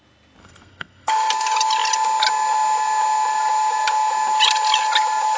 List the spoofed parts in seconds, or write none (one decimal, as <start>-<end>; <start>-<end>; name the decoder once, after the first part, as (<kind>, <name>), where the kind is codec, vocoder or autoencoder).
0.4-1.3 (codec, SNAC)